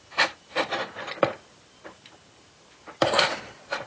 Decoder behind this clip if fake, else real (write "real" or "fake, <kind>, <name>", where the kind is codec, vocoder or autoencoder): real